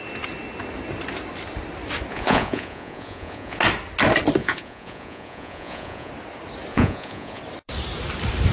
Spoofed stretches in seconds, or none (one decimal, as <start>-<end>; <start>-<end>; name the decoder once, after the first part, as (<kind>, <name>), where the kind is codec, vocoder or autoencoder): 2.1-3.6 (vocoder, Vocos); 4.4-6.1; 6.7-7.4